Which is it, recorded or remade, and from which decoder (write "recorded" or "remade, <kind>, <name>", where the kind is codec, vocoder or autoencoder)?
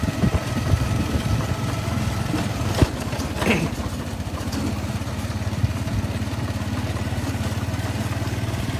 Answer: recorded